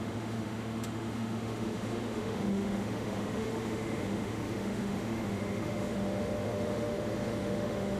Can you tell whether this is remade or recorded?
remade